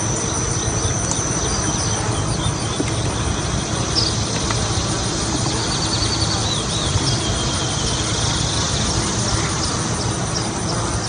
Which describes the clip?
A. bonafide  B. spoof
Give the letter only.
A